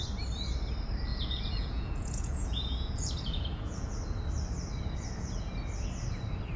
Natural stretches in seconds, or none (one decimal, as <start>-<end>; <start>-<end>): 0.0-1.1; 3.9-6.6